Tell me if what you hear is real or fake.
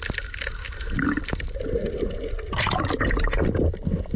real